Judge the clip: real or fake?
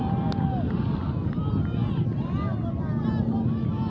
real